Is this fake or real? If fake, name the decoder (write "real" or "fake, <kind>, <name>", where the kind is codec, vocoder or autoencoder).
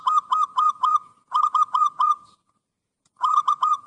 fake, vocoder, Vocos